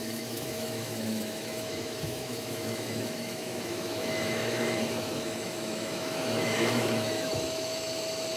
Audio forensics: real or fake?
fake